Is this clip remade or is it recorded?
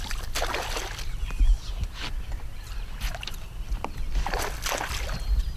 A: recorded